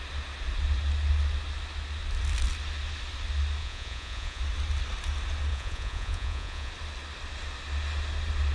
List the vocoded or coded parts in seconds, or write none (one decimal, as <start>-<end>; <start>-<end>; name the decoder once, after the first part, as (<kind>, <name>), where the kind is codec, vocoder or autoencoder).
3.6-4.4 (vocoder, Vocos); 5.5-6.7